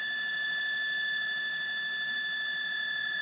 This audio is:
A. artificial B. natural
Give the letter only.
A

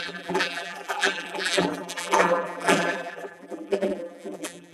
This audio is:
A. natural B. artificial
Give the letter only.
B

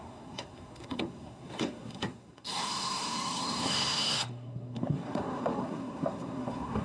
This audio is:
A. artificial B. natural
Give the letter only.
A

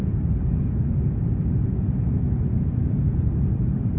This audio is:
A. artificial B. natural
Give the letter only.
A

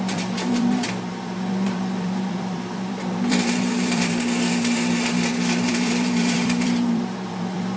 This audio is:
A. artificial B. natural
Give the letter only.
A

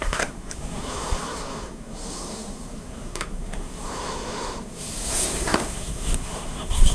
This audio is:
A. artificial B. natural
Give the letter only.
A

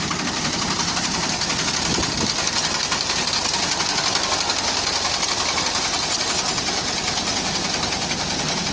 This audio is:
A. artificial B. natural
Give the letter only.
B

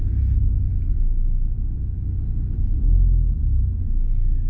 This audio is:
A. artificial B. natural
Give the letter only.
B